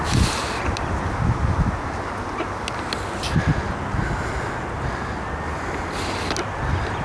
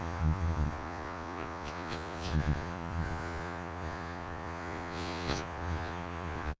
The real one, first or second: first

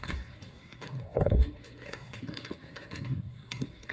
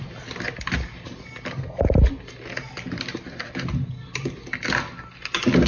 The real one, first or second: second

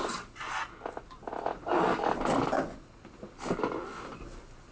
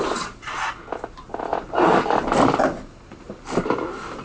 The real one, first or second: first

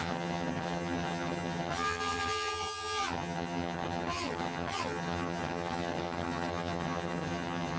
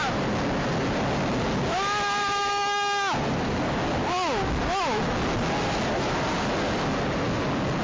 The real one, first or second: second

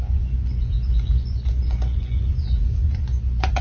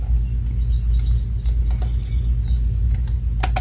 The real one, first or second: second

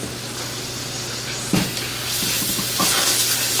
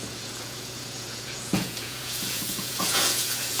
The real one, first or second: first